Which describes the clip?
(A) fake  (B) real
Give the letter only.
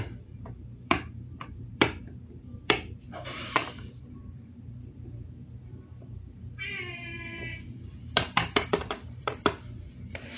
A